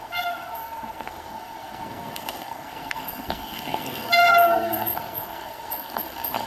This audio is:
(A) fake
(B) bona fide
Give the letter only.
A